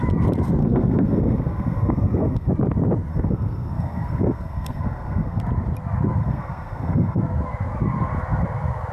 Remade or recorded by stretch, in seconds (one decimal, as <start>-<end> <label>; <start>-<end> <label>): 0.0-0.6 recorded; 0.6-2.5 remade; 2.5-3.1 recorded; 3.1-5.4 remade; 5.4-6.2 recorded; 6.2-7.2 remade; 7.2-8.9 recorded